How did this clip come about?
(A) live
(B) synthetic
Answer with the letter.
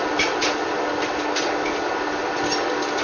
A